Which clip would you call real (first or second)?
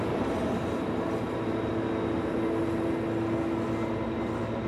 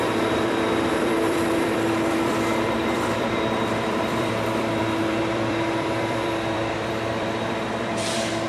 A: first